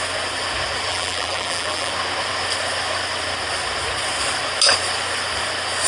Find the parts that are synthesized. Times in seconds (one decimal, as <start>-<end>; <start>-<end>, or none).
0.9-1.9